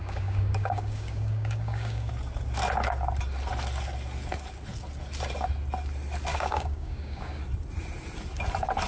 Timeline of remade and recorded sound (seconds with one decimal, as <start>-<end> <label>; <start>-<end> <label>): 0.0-2.1 remade; 2.1-6.3 recorded; 6.3-7.4 remade; 7.4-8.9 recorded